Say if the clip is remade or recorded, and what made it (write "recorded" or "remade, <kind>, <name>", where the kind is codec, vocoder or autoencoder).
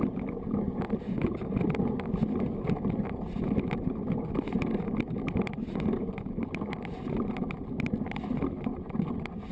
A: recorded